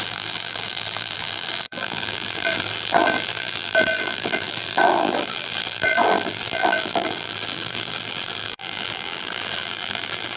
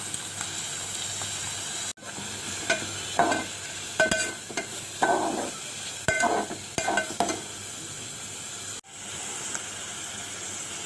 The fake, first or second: first